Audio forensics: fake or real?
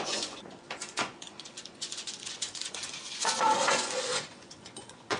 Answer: fake